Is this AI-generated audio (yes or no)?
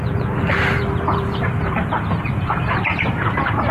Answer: yes